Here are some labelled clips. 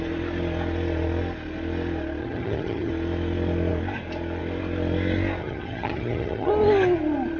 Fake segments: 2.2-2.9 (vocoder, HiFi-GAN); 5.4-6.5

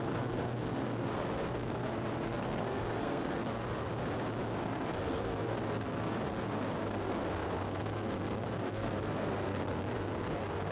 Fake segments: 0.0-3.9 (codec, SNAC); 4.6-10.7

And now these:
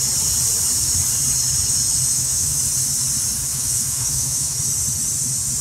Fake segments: 2.1-2.6 (autoencoder, DAC-VAE); 3.5-4.6